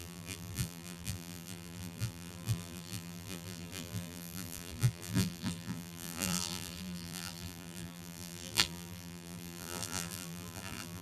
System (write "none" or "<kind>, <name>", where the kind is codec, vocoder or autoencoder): vocoder, BigVGAN v2